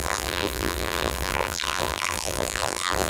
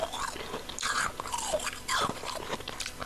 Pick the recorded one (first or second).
second